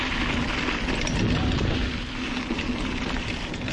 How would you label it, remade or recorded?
recorded